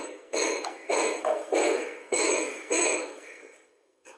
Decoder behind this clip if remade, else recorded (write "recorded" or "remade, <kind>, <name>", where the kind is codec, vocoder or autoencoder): remade, codec, SNAC